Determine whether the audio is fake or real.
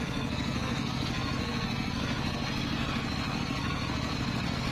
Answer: fake